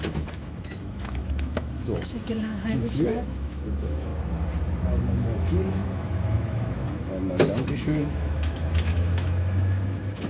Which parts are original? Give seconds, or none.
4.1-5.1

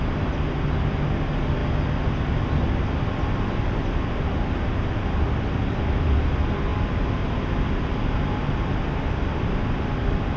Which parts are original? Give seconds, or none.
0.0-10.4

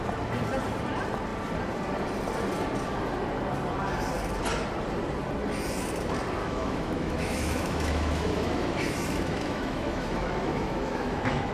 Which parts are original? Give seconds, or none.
0.0-6.4

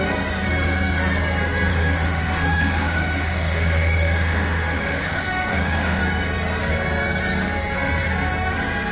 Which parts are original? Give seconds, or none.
0.0-1.7; 6.0-8.9

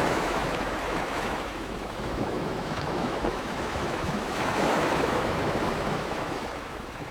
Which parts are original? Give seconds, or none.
none

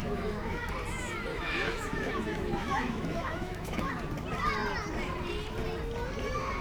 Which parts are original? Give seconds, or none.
0.7-1.3; 3.9-6.6